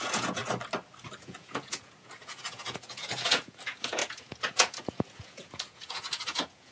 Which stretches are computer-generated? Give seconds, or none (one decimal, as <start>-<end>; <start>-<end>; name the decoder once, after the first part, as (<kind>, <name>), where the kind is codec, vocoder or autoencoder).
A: 0.0-0.4 (vocoder, Vocos); 1.2-6.7